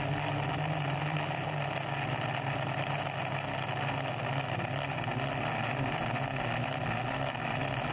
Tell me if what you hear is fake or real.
real